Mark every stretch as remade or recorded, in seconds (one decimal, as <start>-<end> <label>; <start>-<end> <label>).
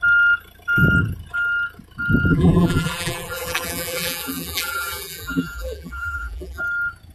0.0-2.3 recorded; 2.3-6.6 remade; 6.6-7.1 recorded